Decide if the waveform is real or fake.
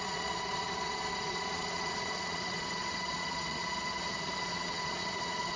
fake